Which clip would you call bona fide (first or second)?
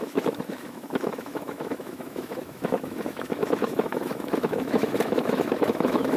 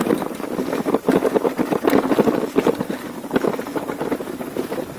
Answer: second